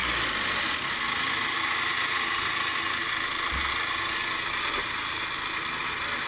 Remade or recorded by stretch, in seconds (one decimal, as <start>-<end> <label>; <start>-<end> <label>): 0.0-6.3 recorded